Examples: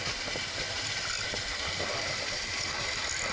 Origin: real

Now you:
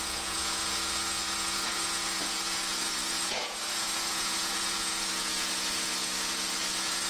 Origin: fake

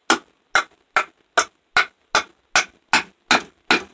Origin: real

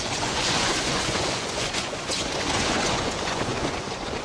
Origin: fake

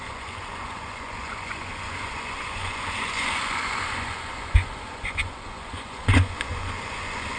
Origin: fake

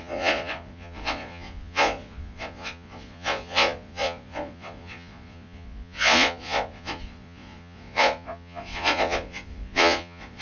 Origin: fake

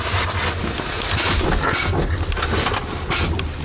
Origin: real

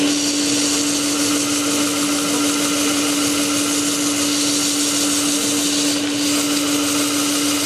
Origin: real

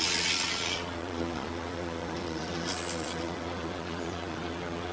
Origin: fake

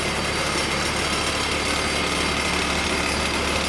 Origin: real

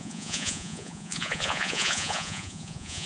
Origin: fake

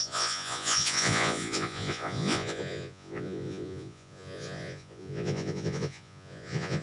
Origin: fake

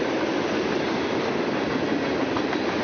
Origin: real